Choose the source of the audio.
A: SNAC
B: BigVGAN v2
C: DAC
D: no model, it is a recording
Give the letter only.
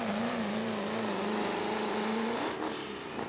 D